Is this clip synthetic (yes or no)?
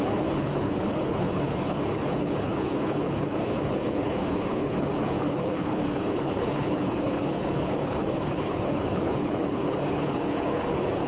yes